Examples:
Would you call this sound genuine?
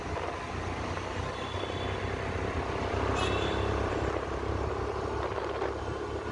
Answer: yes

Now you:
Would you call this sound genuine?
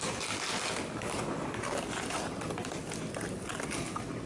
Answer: yes